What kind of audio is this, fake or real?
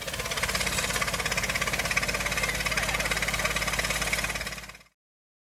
real